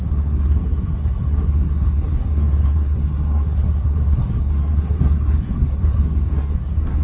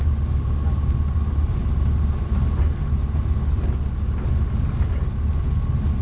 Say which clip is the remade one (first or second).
first